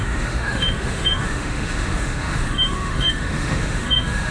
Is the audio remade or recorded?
remade